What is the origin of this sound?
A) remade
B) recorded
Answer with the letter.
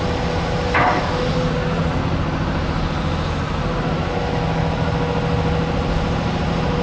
B